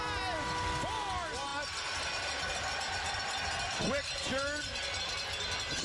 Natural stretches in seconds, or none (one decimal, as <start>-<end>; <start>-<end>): 0.0-5.8